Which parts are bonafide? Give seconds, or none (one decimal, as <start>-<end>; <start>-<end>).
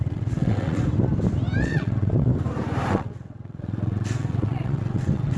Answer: 0.8-1.6; 2.3-2.9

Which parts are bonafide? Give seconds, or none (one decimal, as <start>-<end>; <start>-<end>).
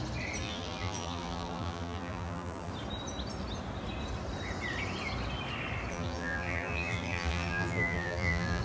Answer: 0.0-0.4; 2.7-5.9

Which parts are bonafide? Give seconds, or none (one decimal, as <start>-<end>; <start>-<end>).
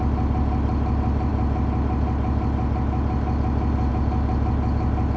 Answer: 0.0-5.2